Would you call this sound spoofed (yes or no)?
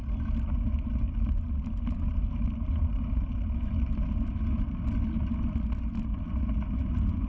no